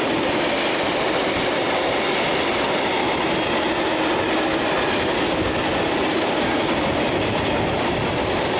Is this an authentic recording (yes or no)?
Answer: yes